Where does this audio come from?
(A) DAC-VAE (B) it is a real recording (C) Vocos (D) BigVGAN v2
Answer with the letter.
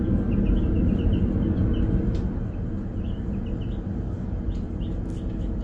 B